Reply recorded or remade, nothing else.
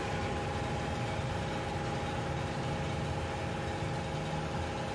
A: recorded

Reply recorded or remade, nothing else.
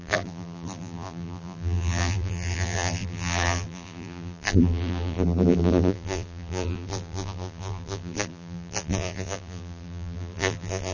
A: remade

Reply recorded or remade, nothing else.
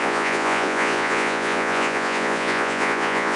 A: remade